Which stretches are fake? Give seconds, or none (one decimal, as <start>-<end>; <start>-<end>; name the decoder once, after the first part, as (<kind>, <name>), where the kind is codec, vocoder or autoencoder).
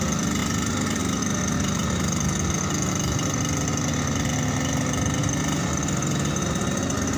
none